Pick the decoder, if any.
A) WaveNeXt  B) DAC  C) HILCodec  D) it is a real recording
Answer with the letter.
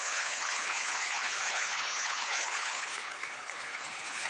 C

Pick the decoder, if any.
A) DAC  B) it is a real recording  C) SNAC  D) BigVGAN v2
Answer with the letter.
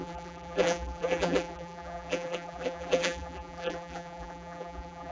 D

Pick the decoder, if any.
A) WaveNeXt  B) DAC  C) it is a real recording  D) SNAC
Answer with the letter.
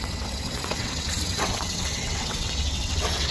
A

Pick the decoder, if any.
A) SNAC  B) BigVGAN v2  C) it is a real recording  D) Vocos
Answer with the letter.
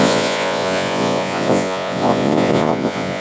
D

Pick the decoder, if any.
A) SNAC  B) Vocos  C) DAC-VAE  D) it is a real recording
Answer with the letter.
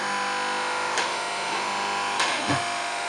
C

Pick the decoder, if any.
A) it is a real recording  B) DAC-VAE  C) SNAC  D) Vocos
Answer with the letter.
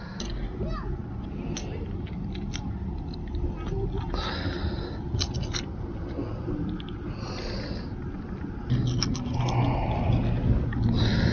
A